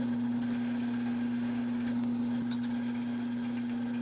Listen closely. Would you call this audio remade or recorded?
recorded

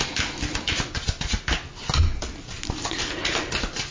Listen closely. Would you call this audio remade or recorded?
recorded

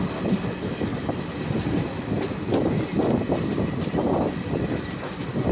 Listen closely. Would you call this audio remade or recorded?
remade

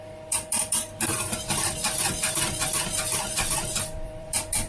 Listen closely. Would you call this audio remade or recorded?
remade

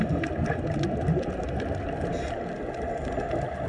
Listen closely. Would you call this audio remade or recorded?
recorded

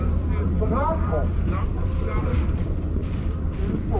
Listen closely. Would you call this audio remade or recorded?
remade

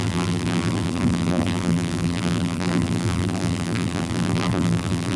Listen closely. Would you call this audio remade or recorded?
remade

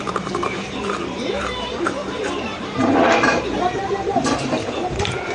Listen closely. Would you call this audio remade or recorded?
remade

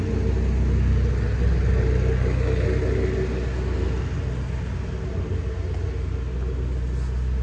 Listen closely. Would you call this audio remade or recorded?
recorded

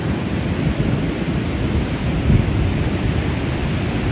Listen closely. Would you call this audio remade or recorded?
remade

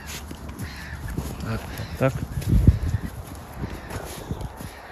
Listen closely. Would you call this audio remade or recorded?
recorded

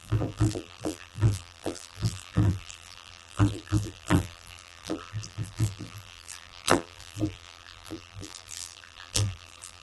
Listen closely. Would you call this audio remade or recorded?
remade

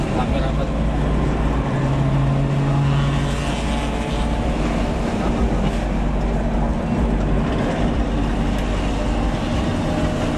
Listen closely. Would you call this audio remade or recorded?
recorded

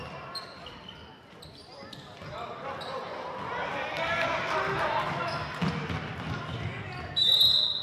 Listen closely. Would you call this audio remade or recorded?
recorded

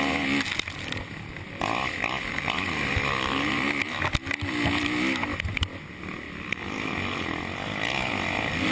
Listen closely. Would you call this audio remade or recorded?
recorded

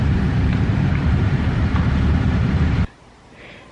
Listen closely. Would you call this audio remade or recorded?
remade